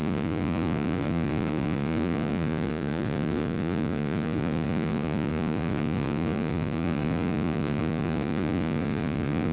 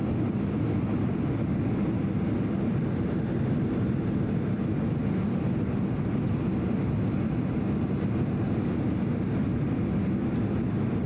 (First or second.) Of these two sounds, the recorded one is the second